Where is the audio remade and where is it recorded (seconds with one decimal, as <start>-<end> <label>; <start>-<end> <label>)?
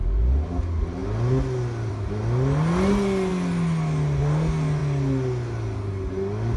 0.0-6.6 recorded